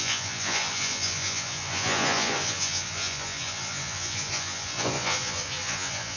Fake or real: fake